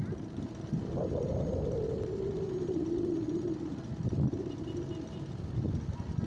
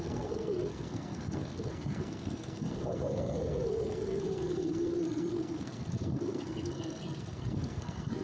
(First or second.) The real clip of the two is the first